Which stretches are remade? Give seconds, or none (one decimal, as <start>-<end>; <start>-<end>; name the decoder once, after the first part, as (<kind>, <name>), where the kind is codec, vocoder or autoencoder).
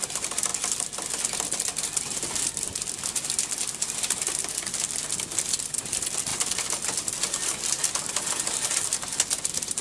none